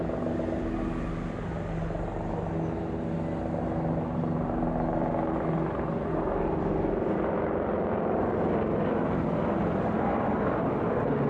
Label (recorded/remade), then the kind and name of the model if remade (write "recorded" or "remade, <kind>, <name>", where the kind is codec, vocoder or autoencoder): recorded